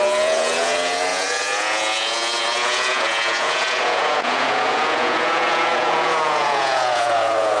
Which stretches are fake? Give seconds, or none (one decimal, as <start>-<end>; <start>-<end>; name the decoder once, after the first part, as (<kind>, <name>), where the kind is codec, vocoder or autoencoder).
0.0-7.6 (vocoder, Vocos)